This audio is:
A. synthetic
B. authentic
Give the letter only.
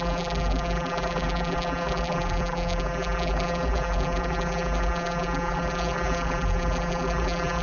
A